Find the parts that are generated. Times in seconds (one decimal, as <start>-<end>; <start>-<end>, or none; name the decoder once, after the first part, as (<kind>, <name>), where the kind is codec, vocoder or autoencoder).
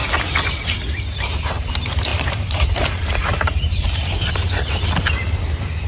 2.1-4.3 (vocoder, BigVGAN v2)